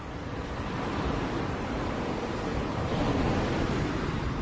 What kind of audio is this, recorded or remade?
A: remade